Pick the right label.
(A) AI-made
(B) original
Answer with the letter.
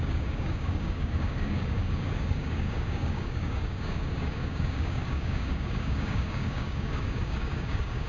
A